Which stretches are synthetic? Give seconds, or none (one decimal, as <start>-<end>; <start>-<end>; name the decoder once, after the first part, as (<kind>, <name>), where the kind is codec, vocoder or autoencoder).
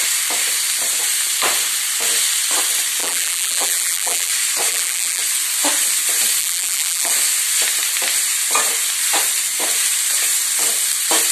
3.0-4.3 (vocoder, BigVGAN v2); 4.7-5.2; 6.4-7.1